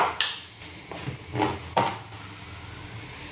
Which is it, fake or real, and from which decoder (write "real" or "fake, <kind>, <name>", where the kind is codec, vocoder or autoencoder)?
real